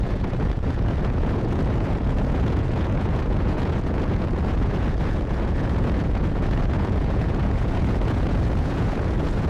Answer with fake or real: fake